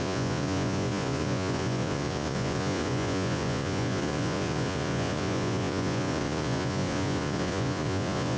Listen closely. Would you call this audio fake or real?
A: fake